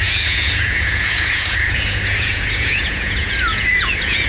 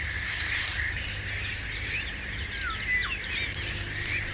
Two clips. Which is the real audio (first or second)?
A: second